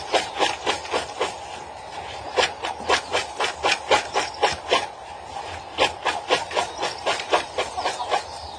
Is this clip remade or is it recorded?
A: recorded